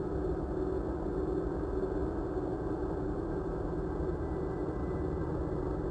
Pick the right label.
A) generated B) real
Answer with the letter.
B